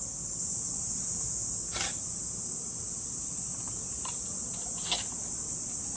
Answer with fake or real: real